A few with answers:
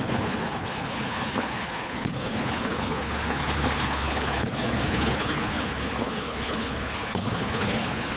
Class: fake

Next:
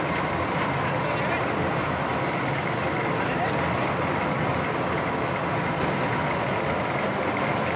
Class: real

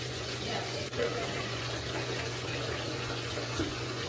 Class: fake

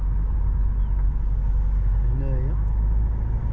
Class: real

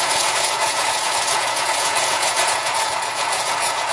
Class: fake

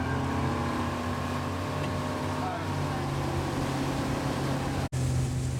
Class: real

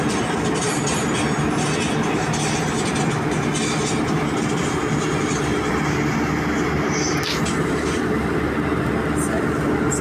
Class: real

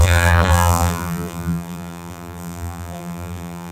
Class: fake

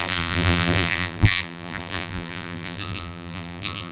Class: fake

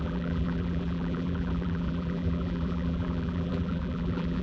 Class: fake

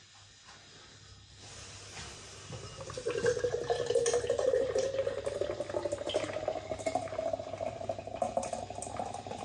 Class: real